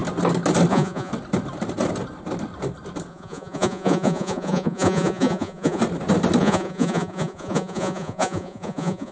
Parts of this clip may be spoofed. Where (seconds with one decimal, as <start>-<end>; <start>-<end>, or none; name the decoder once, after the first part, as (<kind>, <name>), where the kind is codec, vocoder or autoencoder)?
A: 0.7-1.1 (vocoder, Vocos); 3.1-5.8; 6.4-9.1